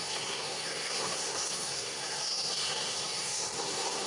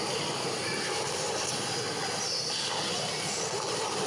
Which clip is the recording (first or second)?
second